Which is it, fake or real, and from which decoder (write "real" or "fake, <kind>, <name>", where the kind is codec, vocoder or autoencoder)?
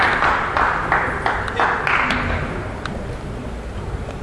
real